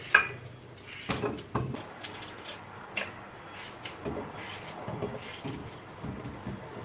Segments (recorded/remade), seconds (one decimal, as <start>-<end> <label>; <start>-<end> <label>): 0.0-6.8 recorded